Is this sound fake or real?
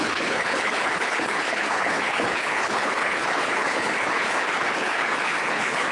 fake